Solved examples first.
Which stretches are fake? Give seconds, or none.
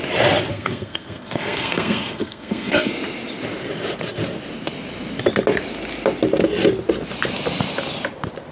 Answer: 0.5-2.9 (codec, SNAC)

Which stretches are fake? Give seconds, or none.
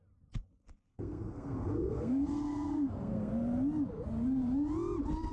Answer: 0.9-3.3 (codec, SNAC)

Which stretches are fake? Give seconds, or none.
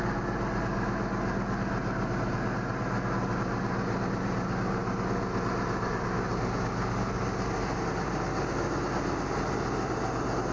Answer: none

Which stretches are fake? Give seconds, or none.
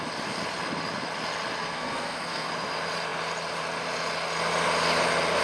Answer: 1.6-2.5 (codec, SNAC)